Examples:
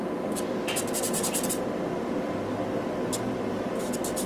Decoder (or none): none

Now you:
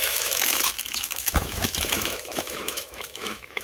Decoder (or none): autoencoder, DAC-VAE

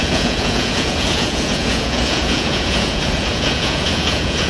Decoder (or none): vocoder, Vocos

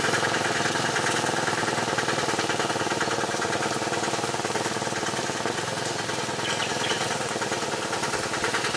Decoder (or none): none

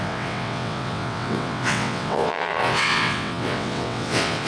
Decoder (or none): vocoder, WaveNeXt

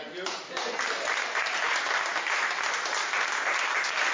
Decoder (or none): vocoder, BigVGAN v2